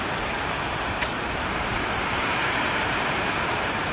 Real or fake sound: fake